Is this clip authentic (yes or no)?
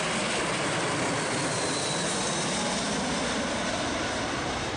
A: yes